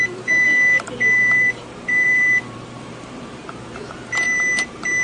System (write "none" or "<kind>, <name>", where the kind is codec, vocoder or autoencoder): vocoder, BigVGAN v2